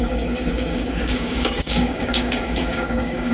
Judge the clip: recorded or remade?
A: remade